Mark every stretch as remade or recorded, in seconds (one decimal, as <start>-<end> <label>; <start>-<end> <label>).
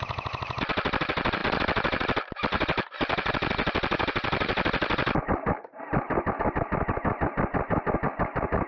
0.0-8.7 recorded